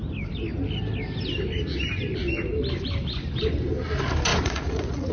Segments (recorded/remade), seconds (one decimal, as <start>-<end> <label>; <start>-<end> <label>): 0.0-4.3 recorded; 4.3-5.1 remade